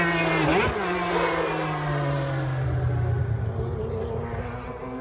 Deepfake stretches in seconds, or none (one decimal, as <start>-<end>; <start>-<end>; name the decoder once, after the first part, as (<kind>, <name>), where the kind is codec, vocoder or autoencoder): none